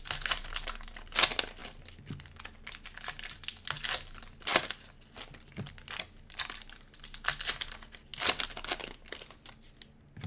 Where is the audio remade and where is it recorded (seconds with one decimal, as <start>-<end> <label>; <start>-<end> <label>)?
0.0-10.3 recorded